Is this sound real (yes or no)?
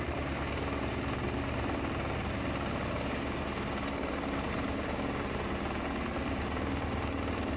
yes